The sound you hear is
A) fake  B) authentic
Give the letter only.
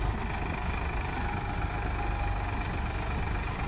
B